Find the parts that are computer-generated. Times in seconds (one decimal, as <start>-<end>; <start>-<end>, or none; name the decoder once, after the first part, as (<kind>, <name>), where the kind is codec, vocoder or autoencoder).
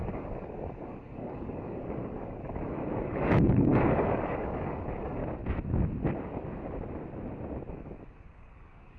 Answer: 0.0-5.2 (codec, DAC); 7.7-9.0